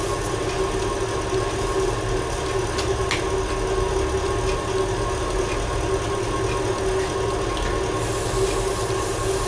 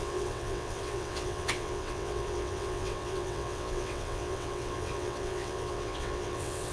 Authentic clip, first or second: first